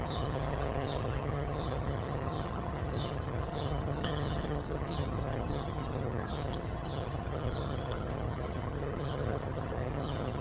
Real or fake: fake